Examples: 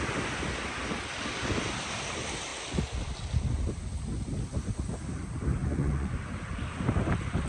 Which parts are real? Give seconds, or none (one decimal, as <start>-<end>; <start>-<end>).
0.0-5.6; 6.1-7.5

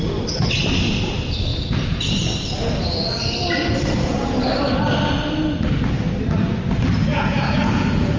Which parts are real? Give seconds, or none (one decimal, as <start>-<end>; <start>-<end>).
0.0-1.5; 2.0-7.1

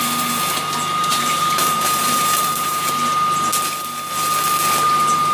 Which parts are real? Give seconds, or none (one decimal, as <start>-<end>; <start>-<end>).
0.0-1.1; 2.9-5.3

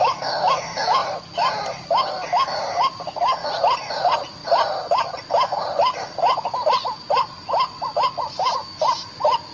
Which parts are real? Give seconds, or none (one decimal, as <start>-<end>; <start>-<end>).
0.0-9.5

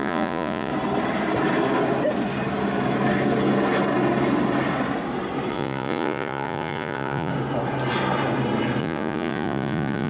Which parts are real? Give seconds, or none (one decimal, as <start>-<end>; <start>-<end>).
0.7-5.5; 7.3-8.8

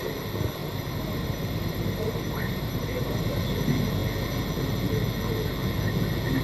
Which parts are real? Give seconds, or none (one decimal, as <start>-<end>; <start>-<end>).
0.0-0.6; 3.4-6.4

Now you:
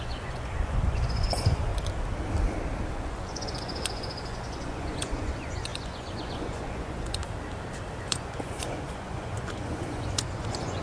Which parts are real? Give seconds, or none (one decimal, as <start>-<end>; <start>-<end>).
1.7-2.9; 7.2-8.0